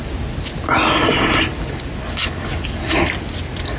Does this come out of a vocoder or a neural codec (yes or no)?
no